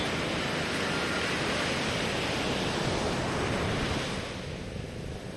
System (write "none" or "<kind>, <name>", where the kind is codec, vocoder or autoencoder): none